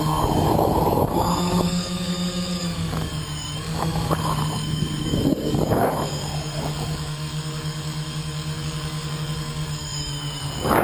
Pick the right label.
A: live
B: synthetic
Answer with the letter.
B